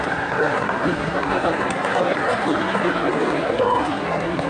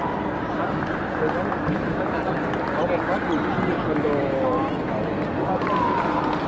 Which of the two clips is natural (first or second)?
second